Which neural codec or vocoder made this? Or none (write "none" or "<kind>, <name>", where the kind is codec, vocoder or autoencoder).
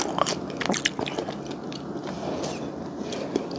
none